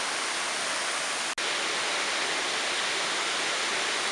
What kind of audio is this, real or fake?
real